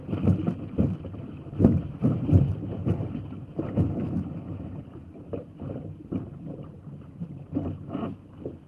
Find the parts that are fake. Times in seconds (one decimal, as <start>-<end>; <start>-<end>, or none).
2.0-5.1; 5.5-8.1